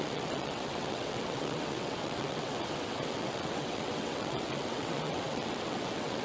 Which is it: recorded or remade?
remade